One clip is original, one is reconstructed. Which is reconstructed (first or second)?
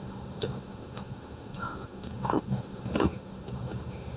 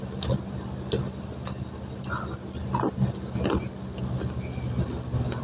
first